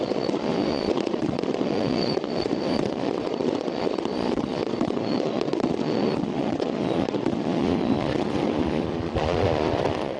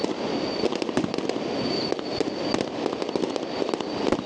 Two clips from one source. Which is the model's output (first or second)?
first